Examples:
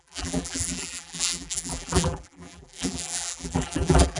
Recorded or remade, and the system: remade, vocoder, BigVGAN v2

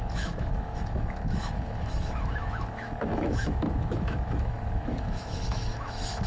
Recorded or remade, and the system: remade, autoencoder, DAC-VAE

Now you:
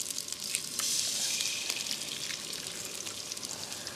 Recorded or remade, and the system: recorded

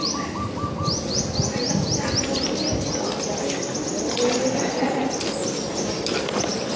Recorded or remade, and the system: remade, vocoder, BigVGAN v2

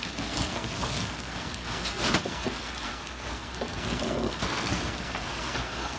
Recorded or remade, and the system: remade, codec, SNAC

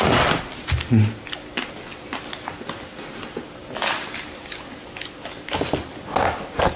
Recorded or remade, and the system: recorded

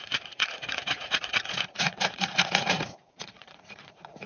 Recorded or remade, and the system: remade, vocoder, Vocos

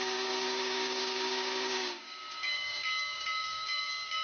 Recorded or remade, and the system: remade, codec, DAC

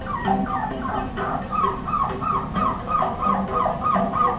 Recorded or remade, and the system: remade, vocoder, BigVGAN v2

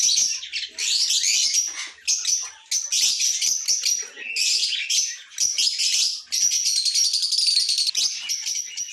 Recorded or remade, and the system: recorded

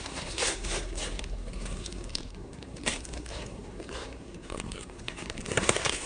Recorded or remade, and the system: remade, codec, SNAC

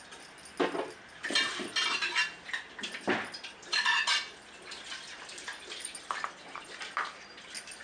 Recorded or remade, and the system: recorded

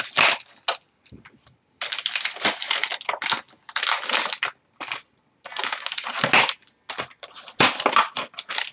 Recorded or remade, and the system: recorded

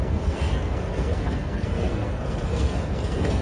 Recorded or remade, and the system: remade, codec, SNAC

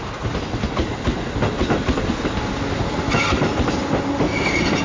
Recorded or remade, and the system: recorded